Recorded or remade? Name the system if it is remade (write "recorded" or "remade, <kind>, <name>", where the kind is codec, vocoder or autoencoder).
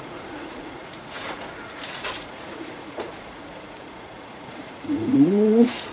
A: remade, vocoder, Vocos